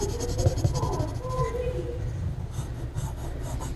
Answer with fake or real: real